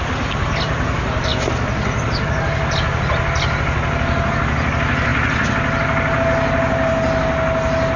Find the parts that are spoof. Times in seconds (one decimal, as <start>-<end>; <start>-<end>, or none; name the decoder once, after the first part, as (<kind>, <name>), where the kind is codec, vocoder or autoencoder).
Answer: none